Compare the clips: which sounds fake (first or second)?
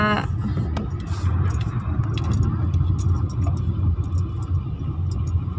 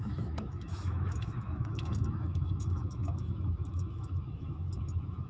second